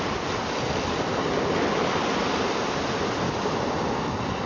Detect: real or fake real